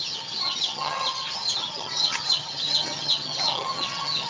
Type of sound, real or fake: fake